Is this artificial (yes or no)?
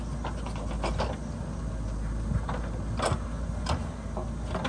no